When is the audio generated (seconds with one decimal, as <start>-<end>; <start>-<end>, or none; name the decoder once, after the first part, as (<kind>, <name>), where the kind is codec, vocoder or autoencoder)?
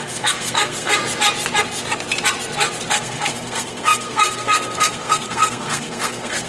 0.0-1.0 (codec, SNAC); 2.9-6.5